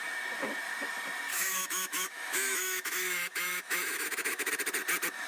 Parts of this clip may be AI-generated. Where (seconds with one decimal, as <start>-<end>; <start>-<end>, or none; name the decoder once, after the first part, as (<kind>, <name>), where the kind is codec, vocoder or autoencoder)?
1.3-4.5 (autoencoder, DAC-VAE)